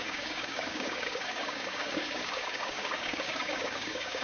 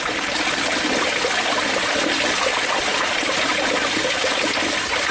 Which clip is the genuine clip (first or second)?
second